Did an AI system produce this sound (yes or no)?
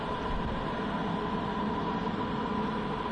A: no